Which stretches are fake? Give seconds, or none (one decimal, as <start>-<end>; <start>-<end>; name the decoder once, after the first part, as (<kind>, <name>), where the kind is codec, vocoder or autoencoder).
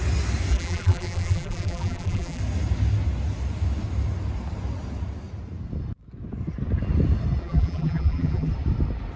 0.5-2.4 (vocoder, BigVGAN v2); 7.4-8.5